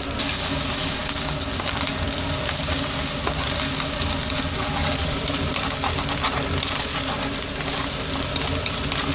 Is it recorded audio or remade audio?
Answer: recorded